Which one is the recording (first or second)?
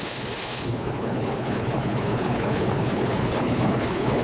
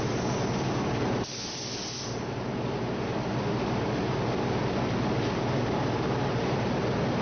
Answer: second